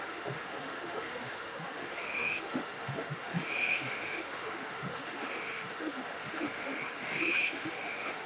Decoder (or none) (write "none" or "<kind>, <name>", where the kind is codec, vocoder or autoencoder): autoencoder, DAC-VAE